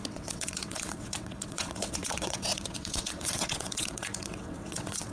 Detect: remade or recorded remade